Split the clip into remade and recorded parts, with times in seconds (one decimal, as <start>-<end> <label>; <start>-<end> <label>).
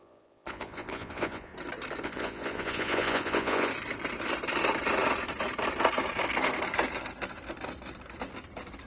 0.0-1.5 remade; 1.5-2.0 recorded; 2.0-3.7 remade; 3.7-8.9 recorded